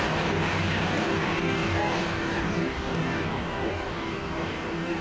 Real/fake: fake